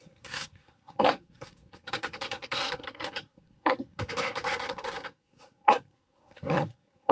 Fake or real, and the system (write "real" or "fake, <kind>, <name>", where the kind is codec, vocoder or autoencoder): fake, codec, SNAC